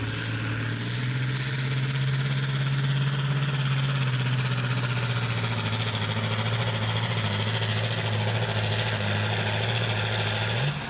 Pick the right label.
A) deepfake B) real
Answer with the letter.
B